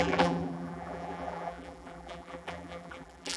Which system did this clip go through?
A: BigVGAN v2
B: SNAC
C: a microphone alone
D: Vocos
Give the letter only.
A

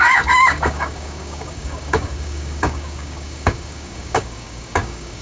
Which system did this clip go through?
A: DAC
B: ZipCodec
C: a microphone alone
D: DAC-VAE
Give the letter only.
A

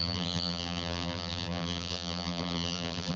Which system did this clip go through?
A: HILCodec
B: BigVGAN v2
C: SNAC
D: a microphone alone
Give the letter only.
B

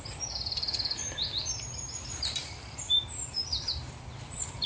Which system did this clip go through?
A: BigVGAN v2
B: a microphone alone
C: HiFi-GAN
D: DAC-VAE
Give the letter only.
A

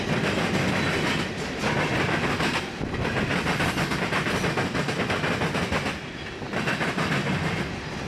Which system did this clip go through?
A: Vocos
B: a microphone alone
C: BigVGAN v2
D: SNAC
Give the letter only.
B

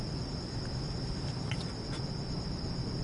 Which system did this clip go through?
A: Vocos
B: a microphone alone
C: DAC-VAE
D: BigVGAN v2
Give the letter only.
B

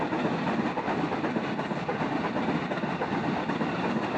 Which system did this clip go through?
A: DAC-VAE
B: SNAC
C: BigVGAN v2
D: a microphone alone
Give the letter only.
D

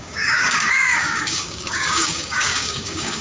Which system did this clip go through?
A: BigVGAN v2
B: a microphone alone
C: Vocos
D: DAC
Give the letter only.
D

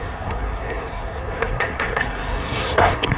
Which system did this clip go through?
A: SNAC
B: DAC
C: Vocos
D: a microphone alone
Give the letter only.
A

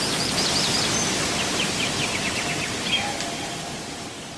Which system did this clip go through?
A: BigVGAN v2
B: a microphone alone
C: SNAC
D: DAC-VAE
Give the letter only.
B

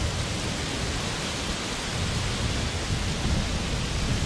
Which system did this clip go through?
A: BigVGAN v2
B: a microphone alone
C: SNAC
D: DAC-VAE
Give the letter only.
B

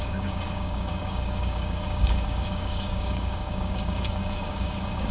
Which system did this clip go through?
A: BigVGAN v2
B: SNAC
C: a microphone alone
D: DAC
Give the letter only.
D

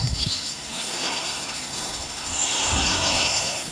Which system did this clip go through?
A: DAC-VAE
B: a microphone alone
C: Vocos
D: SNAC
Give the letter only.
D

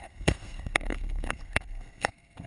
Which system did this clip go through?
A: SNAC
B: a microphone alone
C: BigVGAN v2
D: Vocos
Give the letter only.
A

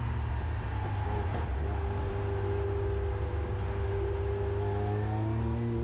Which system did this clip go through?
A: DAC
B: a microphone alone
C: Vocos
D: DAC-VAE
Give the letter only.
B